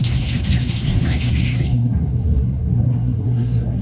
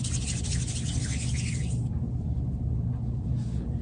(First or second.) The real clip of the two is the second